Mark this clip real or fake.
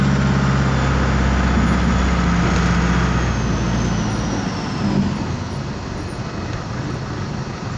real